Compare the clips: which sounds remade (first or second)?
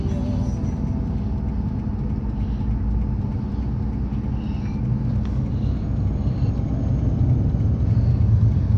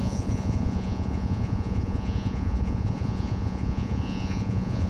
second